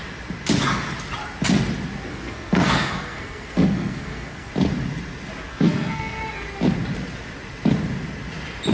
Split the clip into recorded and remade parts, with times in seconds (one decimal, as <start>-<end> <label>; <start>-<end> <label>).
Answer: 0.0-2.1 recorded; 2.1-4.5 remade; 4.5-5.5 recorded; 5.5-6.2 remade; 6.2-8.7 recorded